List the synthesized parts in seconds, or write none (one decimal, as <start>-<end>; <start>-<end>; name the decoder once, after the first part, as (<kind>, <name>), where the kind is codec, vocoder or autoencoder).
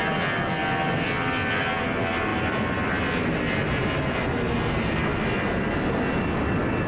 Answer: none